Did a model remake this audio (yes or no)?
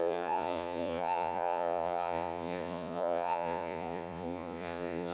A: yes